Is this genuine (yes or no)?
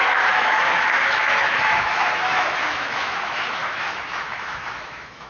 no